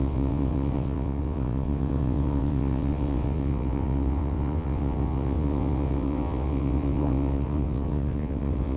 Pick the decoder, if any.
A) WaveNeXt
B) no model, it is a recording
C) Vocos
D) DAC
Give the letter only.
A